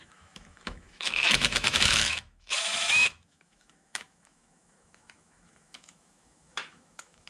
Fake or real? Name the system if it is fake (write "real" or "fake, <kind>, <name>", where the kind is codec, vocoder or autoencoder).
fake, autoencoder, DAC-VAE